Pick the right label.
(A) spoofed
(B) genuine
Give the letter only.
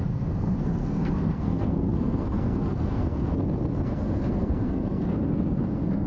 A